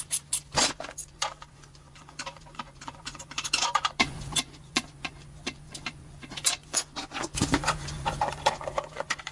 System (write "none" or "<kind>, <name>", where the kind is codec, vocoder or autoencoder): vocoder, Vocos